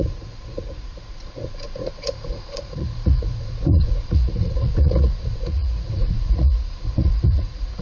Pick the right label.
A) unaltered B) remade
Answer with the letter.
B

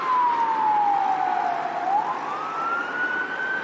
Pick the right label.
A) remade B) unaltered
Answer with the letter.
B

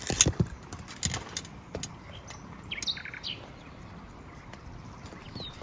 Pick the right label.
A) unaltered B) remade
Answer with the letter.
A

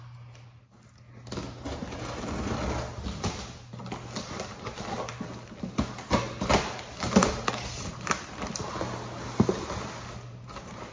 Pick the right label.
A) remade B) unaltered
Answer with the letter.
B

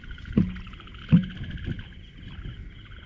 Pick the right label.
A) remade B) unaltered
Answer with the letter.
B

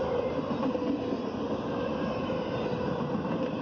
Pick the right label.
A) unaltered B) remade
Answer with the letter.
A